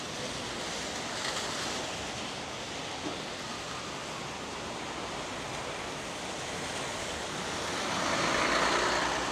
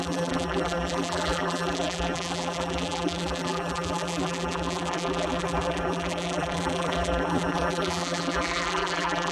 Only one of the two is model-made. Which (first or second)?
second